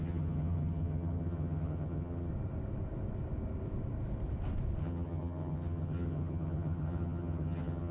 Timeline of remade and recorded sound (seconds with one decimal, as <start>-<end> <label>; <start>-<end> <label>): 0.0-2.3 remade; 2.3-4.8 recorded; 4.8-7.9 remade